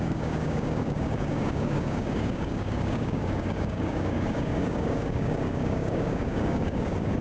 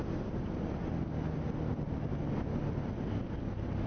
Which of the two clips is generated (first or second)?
first